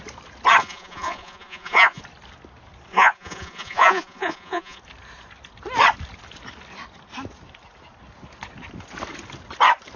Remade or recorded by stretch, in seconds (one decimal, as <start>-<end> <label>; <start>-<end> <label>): 0.0-0.6 recorded; 0.6-2.0 remade; 2.0-2.9 recorded; 2.9-4.8 remade; 4.8-10.0 recorded